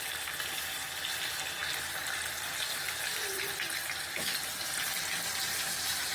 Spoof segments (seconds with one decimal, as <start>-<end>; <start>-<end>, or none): none